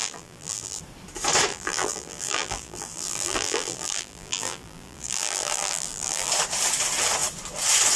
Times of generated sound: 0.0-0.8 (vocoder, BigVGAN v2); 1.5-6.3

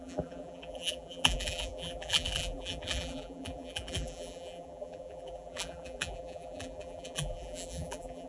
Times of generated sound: 0.0-8.3 (vocoder, BigVGAN v2)

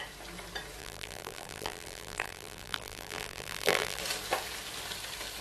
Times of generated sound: 0.8-4.0 (vocoder, BigVGAN v2)

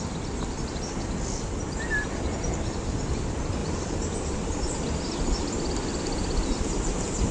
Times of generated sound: 3.6-4.8 (vocoder, BigVGAN v2)

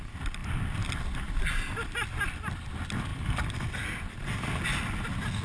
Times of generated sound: 0.4-1.4 (vocoder, BigVGAN v2); 3.1-3.7

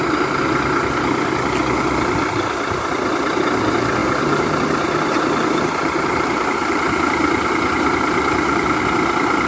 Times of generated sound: 4.0-8.8 (vocoder, BigVGAN v2)